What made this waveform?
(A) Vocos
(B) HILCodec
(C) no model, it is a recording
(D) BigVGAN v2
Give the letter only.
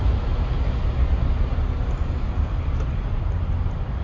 C